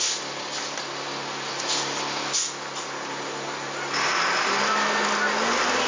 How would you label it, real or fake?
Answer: real